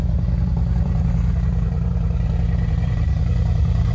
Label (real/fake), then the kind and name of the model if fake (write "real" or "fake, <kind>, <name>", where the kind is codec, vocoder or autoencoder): fake, vocoder, BigVGAN v2